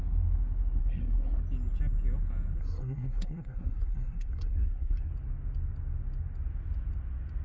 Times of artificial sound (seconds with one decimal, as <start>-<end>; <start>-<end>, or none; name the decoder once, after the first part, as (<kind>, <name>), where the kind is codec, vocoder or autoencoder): 0.8-1.4 (codec, SNAC); 2.6-5.1